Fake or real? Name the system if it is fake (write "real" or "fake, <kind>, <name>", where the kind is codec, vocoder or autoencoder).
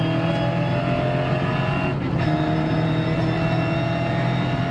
real